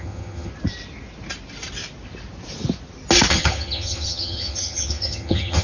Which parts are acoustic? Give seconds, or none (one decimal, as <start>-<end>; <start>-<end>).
0.5-3.3